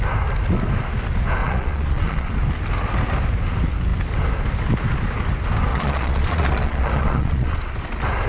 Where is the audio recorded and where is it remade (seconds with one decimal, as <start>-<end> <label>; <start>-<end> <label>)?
0.0-1.4 recorded; 1.4-2.3 remade; 2.3-5.7 recorded; 5.7-7.7 remade; 7.7-8.3 recorded